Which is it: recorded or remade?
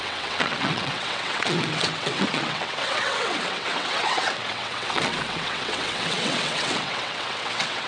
remade